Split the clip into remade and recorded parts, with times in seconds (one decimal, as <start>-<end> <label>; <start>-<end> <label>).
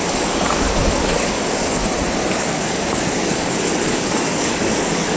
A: 0.0-1.8 remade; 1.8-2.3 recorded; 2.3-5.2 remade